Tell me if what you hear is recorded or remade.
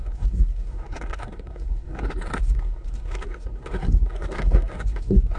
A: remade